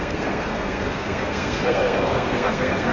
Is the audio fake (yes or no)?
yes